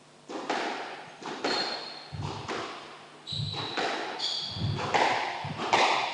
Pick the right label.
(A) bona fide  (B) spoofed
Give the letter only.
A